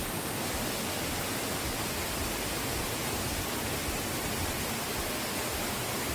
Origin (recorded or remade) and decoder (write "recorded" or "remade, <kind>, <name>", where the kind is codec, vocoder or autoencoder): recorded